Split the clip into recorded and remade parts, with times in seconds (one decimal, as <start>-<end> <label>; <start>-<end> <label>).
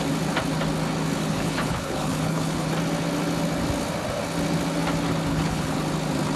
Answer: 0.0-1.2 recorded; 1.2-2.7 remade; 2.7-5.3 recorded; 5.3-5.8 remade; 5.8-6.4 recorded